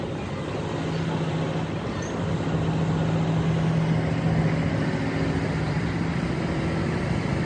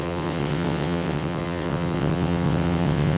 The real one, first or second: first